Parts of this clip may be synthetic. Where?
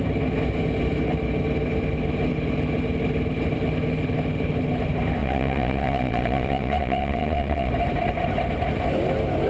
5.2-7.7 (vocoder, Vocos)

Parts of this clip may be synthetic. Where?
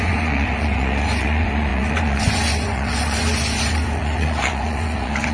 0.0-5.3 (vocoder, Vocos)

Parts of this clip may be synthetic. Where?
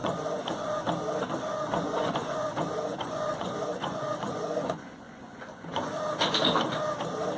0.0-0.8 (vocoder, Vocos); 1.5-5.9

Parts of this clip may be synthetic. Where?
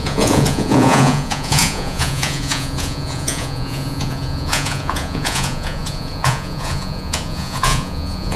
0.0-8.4 (vocoder, Vocos)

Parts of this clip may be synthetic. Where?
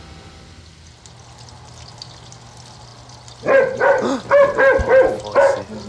none